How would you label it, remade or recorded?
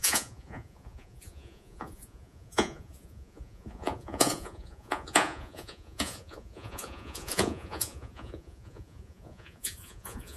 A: remade